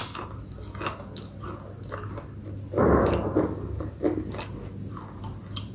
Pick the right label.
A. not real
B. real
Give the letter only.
B